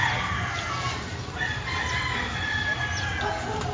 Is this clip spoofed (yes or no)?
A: no